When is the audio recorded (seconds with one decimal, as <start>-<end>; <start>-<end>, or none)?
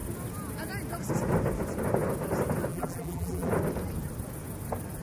0.0-2.7; 3.5-5.0